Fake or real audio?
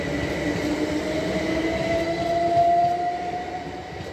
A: real